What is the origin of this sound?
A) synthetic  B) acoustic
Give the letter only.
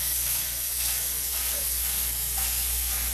A